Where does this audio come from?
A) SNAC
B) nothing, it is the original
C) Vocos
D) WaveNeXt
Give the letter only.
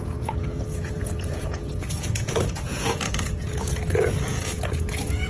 C